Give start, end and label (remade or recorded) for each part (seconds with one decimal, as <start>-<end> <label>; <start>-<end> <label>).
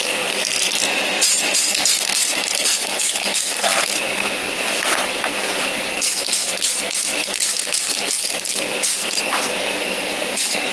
0.0-0.8 remade; 0.8-1.6 recorded; 1.6-10.7 remade